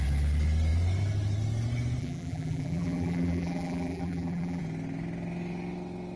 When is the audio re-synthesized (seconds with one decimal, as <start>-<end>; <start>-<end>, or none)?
2.0-4.6